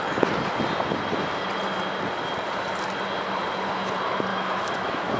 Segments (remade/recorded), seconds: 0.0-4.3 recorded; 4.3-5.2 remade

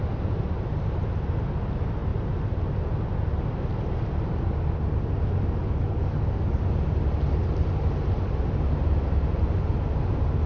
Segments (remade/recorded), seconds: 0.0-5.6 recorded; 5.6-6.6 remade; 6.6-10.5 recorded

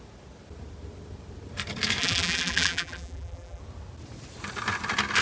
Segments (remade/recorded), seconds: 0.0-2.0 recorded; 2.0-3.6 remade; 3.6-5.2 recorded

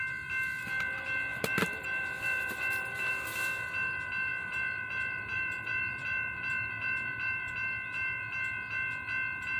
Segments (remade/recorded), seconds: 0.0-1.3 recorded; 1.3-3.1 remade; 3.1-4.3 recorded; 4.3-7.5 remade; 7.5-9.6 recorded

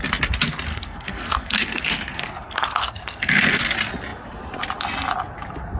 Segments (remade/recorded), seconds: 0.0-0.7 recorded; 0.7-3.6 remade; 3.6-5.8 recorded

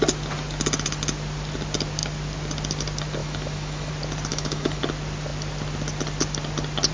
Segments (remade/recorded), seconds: 0.0-3.2 recorded; 3.2-3.9 remade; 3.9-4.3 recorded; 4.3-4.8 remade; 4.8-6.9 recorded

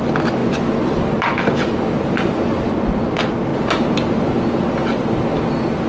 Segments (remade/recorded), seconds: 0.0-5.9 recorded